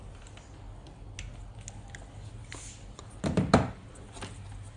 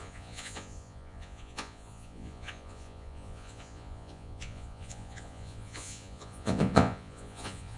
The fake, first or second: second